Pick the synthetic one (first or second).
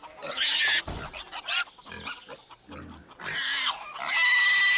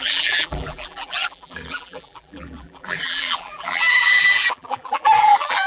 second